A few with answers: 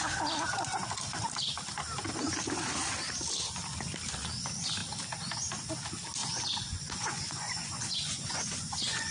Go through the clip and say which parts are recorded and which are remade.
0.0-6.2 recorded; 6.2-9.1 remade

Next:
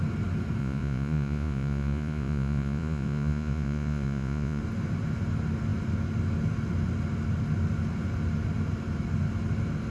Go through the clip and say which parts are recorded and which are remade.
0.0-0.6 recorded; 0.6-4.6 remade; 4.6-9.9 recorded

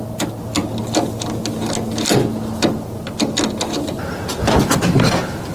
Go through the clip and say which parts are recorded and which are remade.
0.0-5.5 recorded

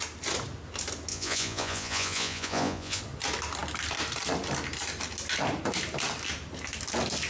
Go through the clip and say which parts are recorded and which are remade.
0.0-1.1 recorded; 1.1-3.0 remade; 3.0-7.3 recorded

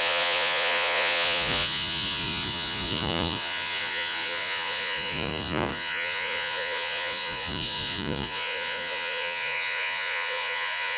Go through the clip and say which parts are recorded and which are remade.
0.0-11.0 remade